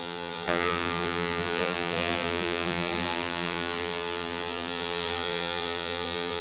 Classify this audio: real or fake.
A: fake